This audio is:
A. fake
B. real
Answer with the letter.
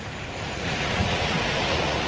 A